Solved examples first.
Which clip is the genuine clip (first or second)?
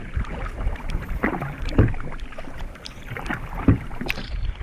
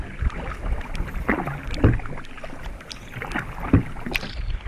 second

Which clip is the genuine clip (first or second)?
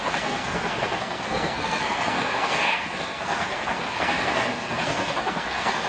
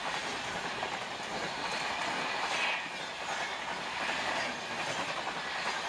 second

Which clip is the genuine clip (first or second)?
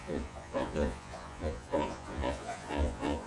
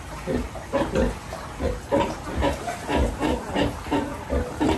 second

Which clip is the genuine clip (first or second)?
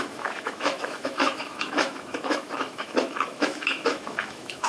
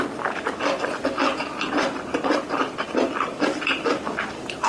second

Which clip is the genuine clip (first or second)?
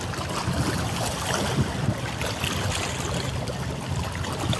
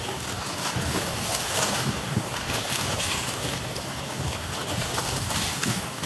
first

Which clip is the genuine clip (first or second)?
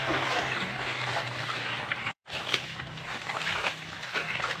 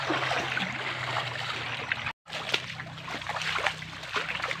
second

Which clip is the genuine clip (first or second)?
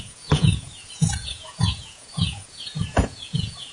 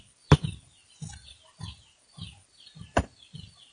second